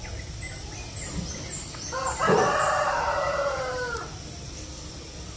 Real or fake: real